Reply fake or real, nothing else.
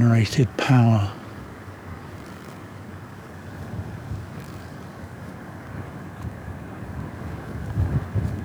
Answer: fake